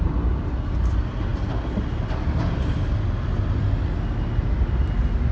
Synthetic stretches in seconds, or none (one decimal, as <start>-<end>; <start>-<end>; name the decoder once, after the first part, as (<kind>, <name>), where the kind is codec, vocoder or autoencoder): none